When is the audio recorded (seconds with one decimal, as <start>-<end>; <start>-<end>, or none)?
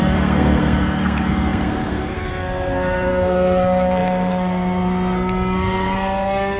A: none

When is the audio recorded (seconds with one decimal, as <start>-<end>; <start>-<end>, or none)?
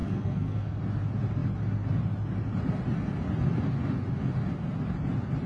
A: 0.8-5.5